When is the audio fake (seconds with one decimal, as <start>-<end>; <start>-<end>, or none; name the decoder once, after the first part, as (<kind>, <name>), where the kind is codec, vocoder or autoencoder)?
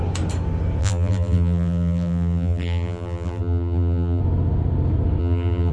0.8-4.2 (vocoder, BigVGAN v2); 5.2-5.7